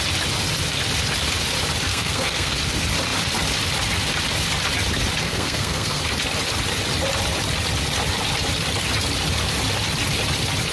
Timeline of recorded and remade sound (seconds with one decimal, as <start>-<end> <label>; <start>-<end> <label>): 0.0-1.9 recorded; 1.9-2.5 remade; 2.5-5.2 recorded; 5.2-6.0 remade; 6.0-10.7 recorded